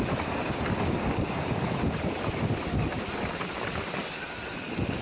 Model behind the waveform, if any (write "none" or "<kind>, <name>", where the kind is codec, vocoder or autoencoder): vocoder, BigVGAN v2